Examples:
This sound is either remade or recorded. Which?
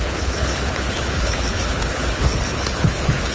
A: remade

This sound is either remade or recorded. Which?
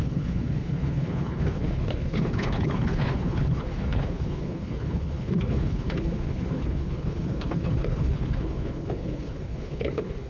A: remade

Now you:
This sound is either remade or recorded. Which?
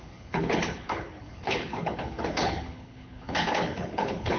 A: remade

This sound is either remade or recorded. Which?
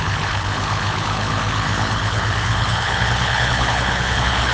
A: remade